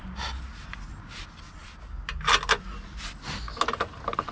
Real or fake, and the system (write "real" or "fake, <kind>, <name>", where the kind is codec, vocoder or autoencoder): real